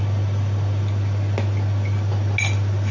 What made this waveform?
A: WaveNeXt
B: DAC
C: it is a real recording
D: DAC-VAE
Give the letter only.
C